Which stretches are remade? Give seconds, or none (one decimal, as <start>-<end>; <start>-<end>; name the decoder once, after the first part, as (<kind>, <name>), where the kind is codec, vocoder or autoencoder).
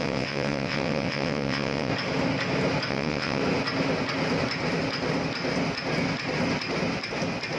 0.0-1.9 (vocoder, WaveNeXt); 2.9-3.4